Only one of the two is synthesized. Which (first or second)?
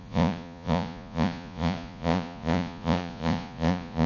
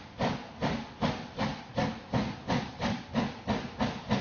first